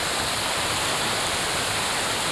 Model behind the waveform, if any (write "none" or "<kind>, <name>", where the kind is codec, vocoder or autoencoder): none